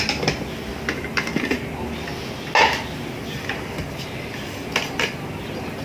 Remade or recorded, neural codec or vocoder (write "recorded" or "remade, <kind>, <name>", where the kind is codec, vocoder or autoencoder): recorded